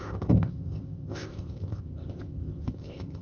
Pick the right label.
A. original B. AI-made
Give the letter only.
B